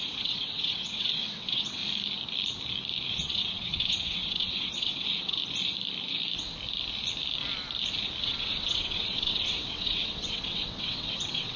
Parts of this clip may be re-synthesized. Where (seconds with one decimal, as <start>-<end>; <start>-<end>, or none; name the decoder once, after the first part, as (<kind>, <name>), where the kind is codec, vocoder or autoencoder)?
0.0-1.8 (vocoder, WaveNeXt); 3.1-5.4; 8.2-11.6